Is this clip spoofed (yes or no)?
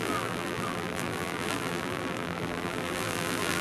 yes